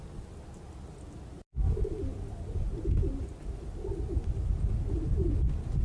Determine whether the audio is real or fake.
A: real